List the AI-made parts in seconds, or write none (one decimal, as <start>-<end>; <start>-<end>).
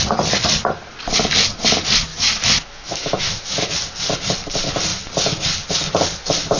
2.1-3.7